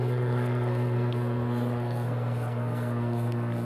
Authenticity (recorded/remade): remade